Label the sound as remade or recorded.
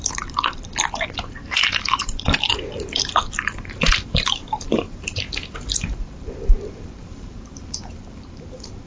remade